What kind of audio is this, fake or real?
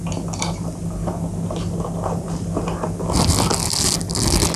real